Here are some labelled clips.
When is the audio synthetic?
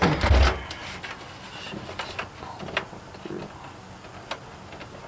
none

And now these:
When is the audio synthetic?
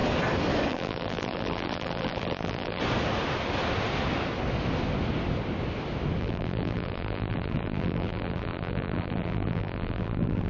0.7-2.8 (vocoder, BigVGAN v2); 6.2-10.5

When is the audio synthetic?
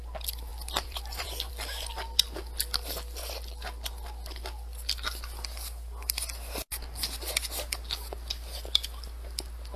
0.5-1.5 (vocoder, BigVGAN v2)